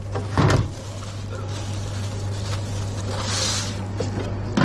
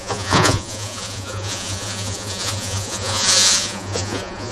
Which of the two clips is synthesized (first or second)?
second